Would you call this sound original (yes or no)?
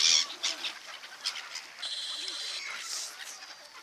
yes